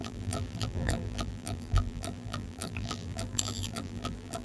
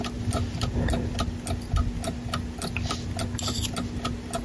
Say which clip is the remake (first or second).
first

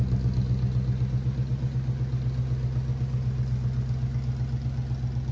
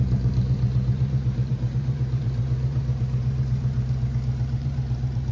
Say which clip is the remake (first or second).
second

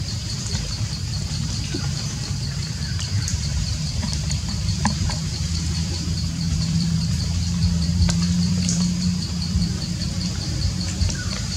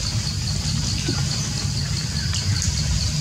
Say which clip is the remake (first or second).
first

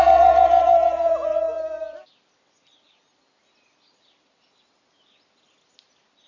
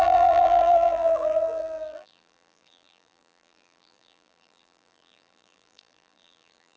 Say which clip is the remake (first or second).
second